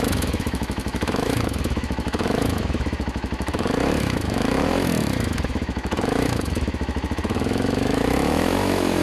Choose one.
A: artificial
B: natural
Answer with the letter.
A